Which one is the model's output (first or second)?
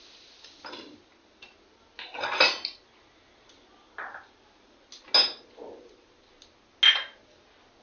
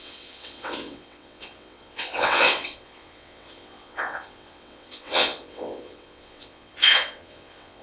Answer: second